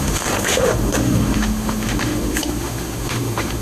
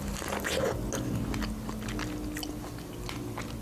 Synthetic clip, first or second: first